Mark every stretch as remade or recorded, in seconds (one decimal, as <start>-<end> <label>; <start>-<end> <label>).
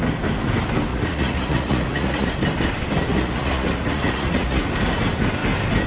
0.0-0.9 recorded; 0.9-2.3 remade; 2.3-3.1 recorded; 3.1-4.6 remade; 4.6-5.9 recorded